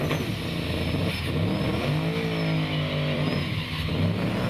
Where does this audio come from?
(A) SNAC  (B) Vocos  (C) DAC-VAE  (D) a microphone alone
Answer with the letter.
D